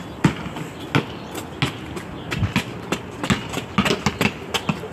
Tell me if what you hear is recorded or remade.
recorded